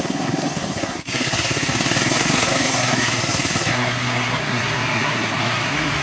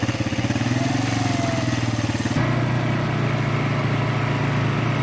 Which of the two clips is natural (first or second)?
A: second